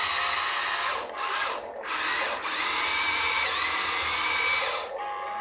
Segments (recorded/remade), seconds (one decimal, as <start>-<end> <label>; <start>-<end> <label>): 0.0-3.2 remade; 3.2-5.4 recorded